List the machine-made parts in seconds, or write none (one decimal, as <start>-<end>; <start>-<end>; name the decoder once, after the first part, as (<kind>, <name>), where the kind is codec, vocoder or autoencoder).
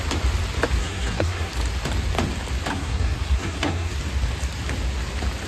0.8-1.5 (codec, SNAC); 2.7-4.0